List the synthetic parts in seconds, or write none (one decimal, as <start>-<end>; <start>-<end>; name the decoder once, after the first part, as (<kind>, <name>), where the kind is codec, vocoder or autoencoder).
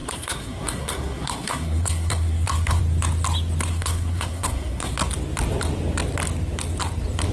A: 0.0-2.8 (codec, SNAC); 3.7-4.9